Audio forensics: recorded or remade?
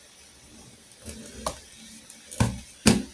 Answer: recorded